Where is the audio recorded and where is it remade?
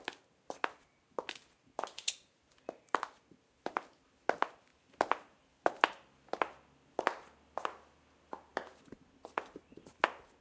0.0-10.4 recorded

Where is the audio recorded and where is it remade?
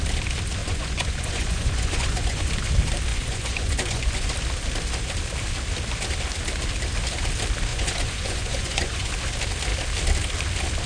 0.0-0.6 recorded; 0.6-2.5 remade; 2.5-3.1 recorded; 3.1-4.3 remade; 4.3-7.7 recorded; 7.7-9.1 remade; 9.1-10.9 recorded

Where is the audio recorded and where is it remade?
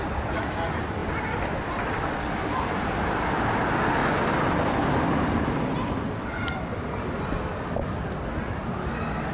0.0-9.3 recorded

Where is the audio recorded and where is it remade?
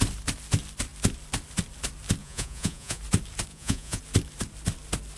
0.0-2.2 recorded; 2.2-3.0 remade; 3.0-3.5 recorded; 3.5-4.0 remade; 4.0-5.2 recorded